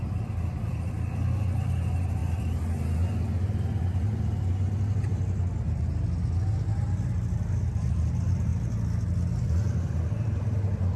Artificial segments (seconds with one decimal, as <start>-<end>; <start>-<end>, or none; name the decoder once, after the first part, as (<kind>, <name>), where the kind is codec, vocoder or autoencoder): 0.0-2.2 (vocoder, BigVGAN v2); 6.8-8.5; 9.4-11.0